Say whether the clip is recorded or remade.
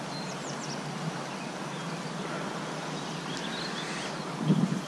recorded